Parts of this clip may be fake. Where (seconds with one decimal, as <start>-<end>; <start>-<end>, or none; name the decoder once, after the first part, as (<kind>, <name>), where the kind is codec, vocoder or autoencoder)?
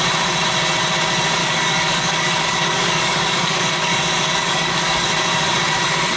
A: 1.4-5.1 (codec, DAC)